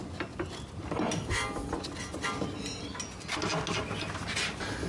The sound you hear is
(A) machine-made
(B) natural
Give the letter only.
B